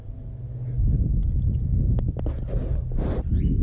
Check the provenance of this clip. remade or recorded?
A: recorded